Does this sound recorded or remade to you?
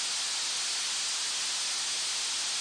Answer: recorded